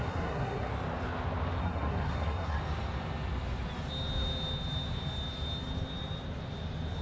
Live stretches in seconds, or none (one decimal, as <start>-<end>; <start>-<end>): 0.7-1.6; 2.6-7.0